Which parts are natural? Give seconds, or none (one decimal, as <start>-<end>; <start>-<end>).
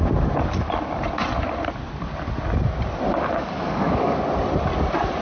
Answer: 0.0-3.1; 4.2-5.2